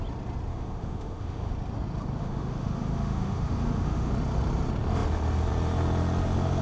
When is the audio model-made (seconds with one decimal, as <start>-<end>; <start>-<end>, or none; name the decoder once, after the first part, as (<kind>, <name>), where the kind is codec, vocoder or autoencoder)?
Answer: 0.5-1.5 (autoencoder, DAC-VAE); 2.2-4.1